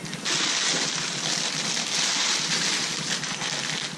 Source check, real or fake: real